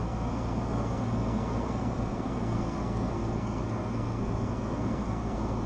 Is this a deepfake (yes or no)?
yes